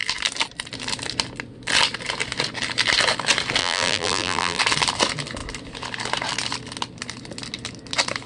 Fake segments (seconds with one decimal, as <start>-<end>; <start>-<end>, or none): 3.6-4.6